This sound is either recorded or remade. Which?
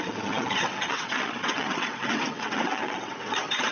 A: remade